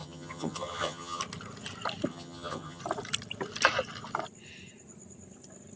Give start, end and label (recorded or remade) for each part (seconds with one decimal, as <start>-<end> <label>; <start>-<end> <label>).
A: 0.0-1.2 remade; 1.2-2.1 recorded; 2.1-2.8 remade; 2.8-5.8 recorded